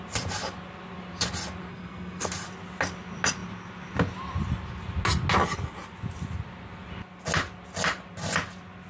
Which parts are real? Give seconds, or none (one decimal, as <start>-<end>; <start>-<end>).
0.0-1.7; 2.3-8.9